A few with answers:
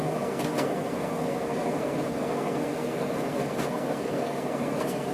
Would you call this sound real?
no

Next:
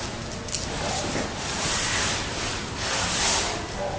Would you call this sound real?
yes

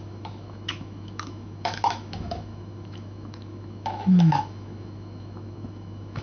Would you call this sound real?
no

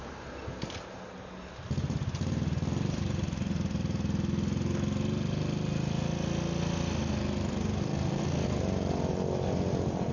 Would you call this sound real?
yes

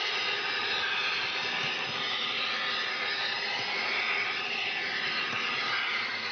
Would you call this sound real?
yes